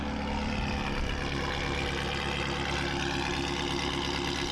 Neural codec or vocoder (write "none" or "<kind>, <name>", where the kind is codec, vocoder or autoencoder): none